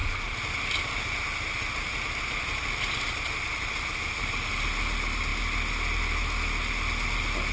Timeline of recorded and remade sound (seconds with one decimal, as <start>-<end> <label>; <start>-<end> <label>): 0.0-7.5 recorded